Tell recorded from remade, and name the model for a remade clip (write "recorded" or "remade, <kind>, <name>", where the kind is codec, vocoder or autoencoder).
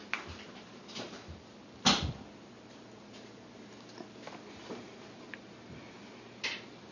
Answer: recorded